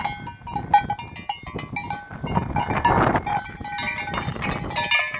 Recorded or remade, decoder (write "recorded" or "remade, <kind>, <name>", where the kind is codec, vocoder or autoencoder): recorded